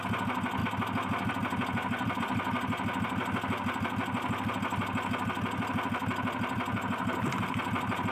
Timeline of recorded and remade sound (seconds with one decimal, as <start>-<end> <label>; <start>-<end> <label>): 0.0-8.1 recorded